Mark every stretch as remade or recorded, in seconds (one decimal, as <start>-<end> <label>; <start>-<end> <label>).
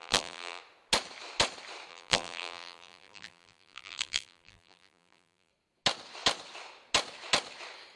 0.0-0.6 remade; 0.6-1.9 recorded; 1.9-5.5 remade; 5.5-8.0 recorded